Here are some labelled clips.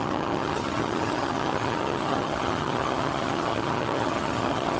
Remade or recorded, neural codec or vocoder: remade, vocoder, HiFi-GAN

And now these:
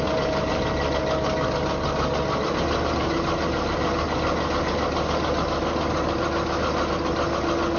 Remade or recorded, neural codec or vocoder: recorded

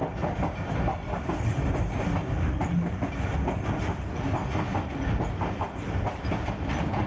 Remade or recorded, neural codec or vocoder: recorded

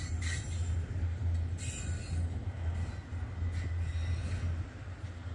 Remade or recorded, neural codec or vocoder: recorded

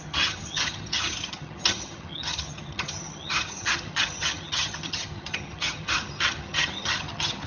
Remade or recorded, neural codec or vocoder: remade, vocoder, HiFi-GAN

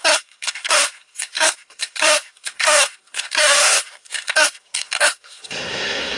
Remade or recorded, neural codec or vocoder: remade, codec, SNAC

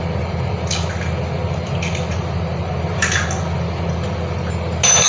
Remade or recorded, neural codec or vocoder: recorded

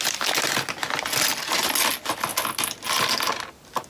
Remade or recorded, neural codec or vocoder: recorded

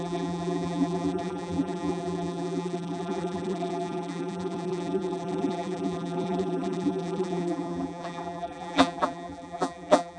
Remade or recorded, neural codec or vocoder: remade, vocoder, BigVGAN v2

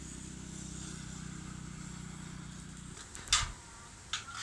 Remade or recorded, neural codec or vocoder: recorded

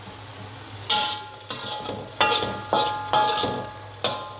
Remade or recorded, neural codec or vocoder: recorded